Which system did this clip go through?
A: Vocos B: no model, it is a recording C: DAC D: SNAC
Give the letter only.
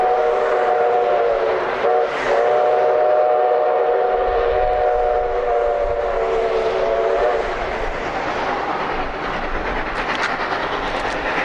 B